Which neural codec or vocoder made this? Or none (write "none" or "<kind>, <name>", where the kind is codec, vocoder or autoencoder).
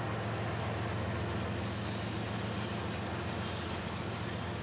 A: none